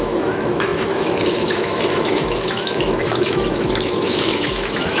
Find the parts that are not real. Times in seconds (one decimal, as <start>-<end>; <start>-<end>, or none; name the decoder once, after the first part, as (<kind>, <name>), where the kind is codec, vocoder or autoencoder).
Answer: 0.0-5.0 (autoencoder, DAC-VAE)